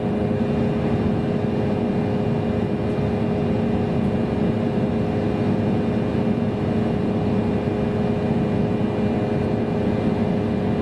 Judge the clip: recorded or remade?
recorded